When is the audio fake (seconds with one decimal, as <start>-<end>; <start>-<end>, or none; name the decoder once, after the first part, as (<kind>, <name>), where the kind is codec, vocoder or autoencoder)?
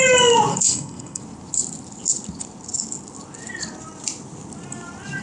0.5-1.2 (codec, SNAC)